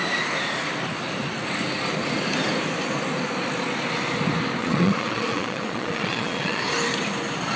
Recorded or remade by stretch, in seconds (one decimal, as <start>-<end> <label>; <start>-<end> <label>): 0.0-4.6 recorded; 4.6-6.6 remade; 6.6-7.6 recorded